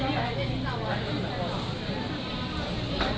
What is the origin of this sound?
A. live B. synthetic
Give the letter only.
A